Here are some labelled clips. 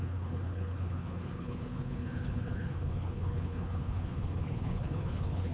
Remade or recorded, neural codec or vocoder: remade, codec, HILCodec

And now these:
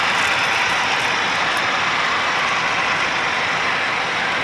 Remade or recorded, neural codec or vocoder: recorded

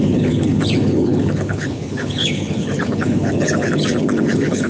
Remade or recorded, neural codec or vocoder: remade, codec, HILCodec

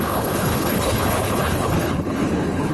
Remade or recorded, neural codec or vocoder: remade, codec, HILCodec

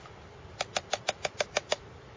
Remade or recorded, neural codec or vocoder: recorded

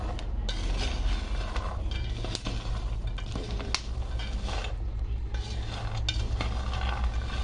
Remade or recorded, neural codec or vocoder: recorded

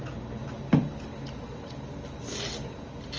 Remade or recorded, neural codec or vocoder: recorded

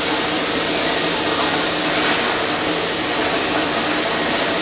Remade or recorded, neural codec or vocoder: recorded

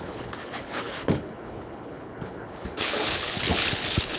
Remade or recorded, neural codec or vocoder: remade, codec, HILCodec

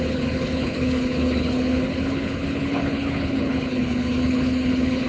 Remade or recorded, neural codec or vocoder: remade, codec, HILCodec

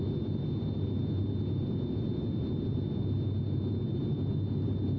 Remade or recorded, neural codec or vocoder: recorded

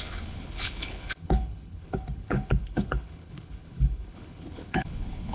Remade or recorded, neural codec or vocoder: remade, codec, HILCodec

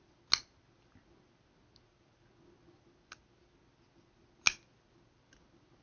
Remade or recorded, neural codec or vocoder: recorded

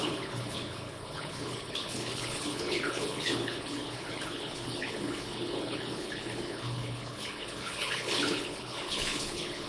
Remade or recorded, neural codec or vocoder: remade, codec, HILCodec